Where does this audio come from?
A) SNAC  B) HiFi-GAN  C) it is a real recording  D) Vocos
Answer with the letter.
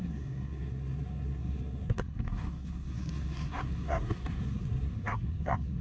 A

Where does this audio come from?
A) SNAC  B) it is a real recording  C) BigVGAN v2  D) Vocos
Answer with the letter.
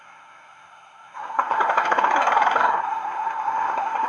A